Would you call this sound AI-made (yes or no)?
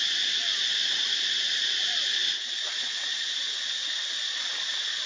no